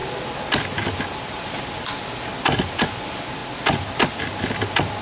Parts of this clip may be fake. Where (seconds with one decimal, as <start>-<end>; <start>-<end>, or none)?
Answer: none